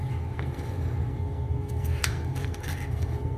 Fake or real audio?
fake